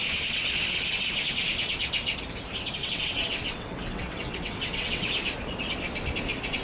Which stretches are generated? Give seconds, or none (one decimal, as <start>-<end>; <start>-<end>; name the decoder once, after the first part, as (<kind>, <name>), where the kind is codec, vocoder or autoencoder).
2.8-5.1 (vocoder, WaveNeXt)